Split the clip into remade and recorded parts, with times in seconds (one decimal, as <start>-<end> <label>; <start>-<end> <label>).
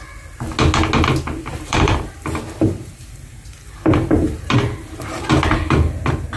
0.0-1.5 recorded; 1.5-5.3 remade; 5.3-6.4 recorded